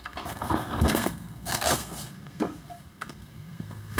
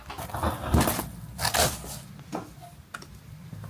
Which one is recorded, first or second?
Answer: second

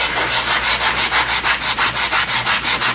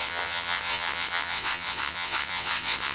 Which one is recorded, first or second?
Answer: first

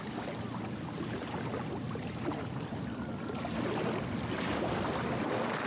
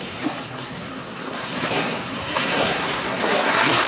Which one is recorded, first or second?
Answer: first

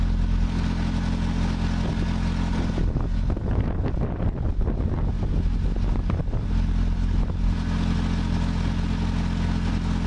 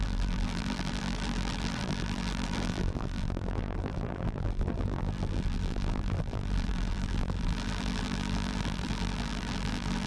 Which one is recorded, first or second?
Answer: first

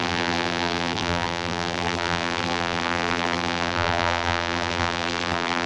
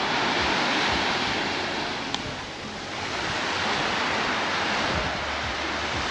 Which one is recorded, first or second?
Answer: second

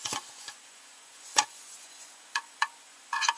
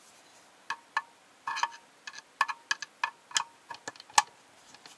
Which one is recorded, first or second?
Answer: second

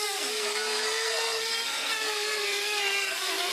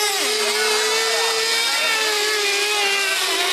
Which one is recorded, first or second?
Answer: second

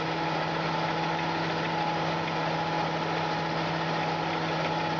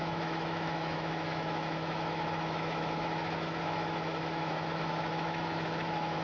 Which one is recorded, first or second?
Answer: first